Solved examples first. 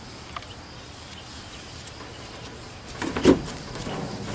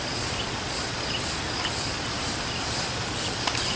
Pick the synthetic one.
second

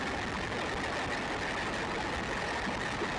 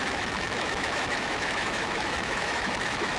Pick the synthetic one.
second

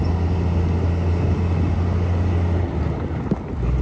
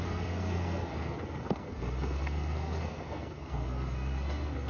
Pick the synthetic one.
second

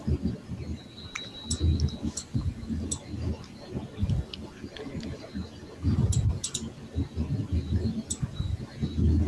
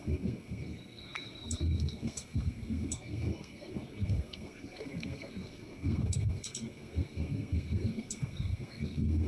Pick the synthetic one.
second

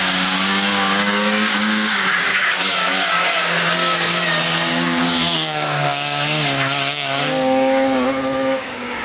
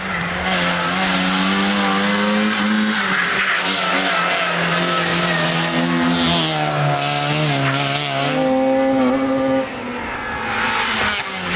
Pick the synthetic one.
first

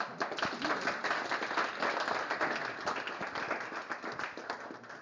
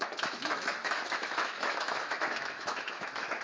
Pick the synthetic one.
second